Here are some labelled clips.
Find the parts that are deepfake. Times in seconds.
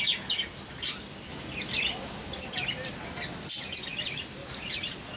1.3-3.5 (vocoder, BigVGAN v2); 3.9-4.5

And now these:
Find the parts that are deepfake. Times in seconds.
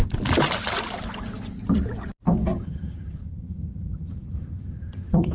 2.5-5.3 (vocoder, HiFi-GAN)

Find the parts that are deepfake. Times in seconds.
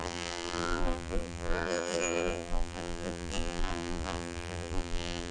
0.0-5.3 (vocoder, BigVGAN v2)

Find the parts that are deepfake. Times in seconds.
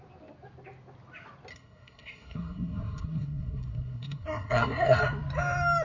1.5-5.0 (codec, SNAC)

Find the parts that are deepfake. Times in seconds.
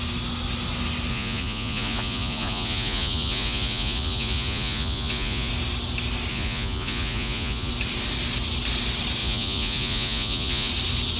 1.1-5.5 (vocoder, Vocos); 6.3-7.7; 9.2-10.7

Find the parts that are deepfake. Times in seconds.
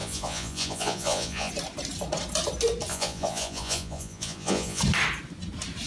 0.0-1.5 (vocoder, Vocos); 2.9-4.8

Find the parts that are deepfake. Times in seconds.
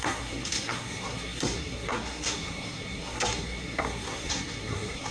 0.0-5.1 (codec, SNAC)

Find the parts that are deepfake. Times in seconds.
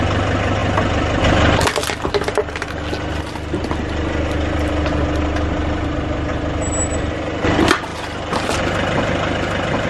7.9-8.6 (vocoder, BigVGAN v2)